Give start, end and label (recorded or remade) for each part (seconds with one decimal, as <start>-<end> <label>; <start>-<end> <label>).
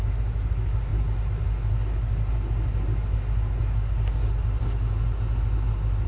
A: 0.0-6.1 recorded